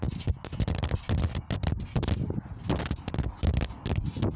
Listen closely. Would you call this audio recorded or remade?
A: recorded